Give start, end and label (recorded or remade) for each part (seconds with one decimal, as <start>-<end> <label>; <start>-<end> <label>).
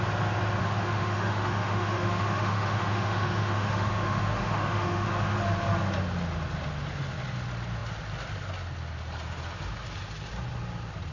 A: 0.0-0.6 recorded; 0.6-5.1 remade; 5.1-11.1 recorded